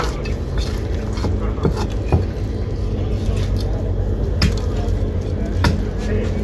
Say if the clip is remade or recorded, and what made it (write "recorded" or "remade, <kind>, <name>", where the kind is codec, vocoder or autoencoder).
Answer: recorded